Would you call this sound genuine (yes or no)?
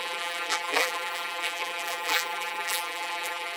no